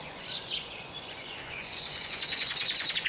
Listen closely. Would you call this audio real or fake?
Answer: fake